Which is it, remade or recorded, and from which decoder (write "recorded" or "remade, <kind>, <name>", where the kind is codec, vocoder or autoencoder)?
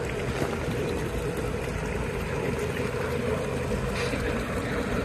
remade, vocoder, BigVGAN v2